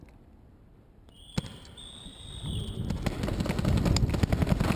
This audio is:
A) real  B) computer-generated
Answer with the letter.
A